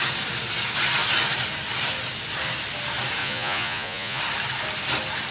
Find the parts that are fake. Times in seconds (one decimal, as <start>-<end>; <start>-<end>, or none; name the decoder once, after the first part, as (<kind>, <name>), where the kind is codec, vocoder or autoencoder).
3.2-4.2 (vocoder, Vocos)